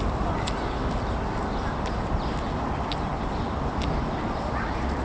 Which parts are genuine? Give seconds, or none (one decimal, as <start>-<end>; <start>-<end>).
0.0-5.0